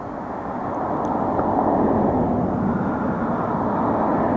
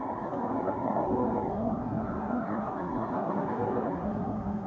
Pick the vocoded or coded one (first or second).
second